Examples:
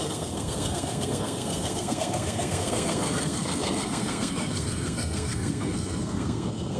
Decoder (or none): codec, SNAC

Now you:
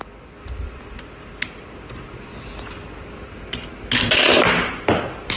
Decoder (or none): none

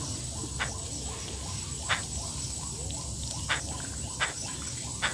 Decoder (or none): none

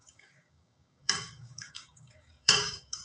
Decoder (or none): codec, DAC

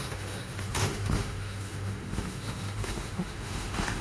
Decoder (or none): autoencoder, DAC-VAE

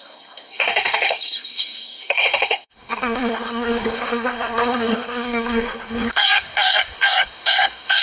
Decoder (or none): codec, SNAC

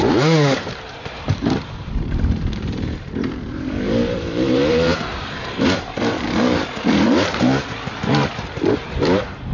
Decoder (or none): vocoder, BigVGAN v2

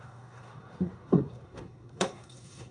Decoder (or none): codec, SNAC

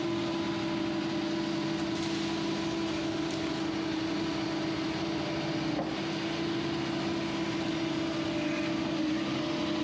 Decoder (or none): none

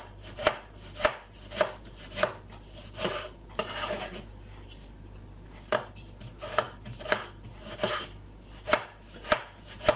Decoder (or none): vocoder, BigVGAN v2